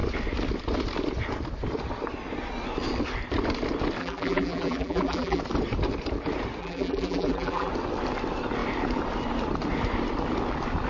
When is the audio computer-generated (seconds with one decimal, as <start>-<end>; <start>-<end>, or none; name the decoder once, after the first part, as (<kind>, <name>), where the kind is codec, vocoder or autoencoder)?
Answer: 4.0-5.4 (vocoder, BigVGAN v2); 6.6-7.7